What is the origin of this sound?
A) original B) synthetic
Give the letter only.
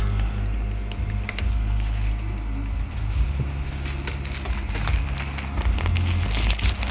A